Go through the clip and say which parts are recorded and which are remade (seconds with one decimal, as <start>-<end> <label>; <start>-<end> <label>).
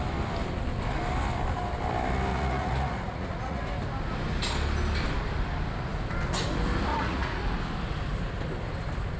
0.0-2.3 recorded; 2.3-3.6 remade; 3.6-6.9 recorded; 6.9-7.5 remade; 7.5-9.2 recorded